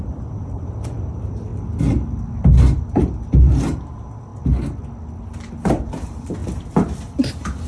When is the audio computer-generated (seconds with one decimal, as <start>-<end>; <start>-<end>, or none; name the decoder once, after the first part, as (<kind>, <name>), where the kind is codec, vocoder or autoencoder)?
0.0-1.5 (vocoder, BigVGAN v2); 2.8-4.3; 5.9-6.4; 7.0-7.7